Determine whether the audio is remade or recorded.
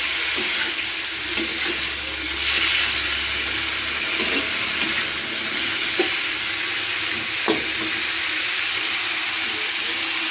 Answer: recorded